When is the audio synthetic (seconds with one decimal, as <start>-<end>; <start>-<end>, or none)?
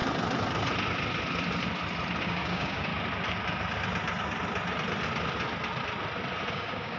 2.2-2.9; 6.5-7.0